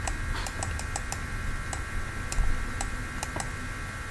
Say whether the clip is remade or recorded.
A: recorded